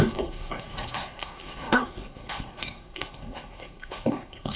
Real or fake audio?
fake